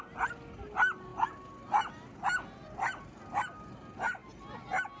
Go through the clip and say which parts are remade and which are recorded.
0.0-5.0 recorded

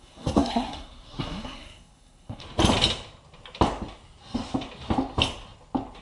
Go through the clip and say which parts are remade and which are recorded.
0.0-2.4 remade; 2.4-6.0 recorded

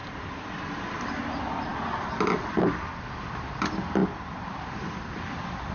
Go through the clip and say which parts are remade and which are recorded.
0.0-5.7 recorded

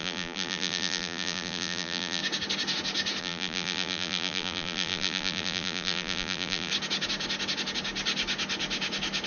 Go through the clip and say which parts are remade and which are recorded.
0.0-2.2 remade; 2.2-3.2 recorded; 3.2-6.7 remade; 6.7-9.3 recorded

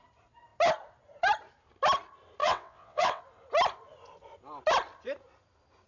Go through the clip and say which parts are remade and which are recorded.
0.0-2.4 recorded; 2.4-3.2 remade; 3.2-5.9 recorded

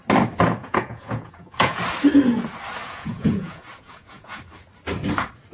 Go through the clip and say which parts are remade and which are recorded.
0.0-0.6 recorded; 0.6-1.8 remade; 1.8-2.8 recorded; 2.8-4.4 remade; 4.4-5.5 recorded

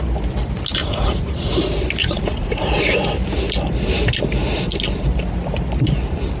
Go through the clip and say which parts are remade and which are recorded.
0.0-0.8 recorded; 0.8-1.5 remade; 1.5-2.0 recorded; 2.0-2.8 remade; 2.8-6.4 recorded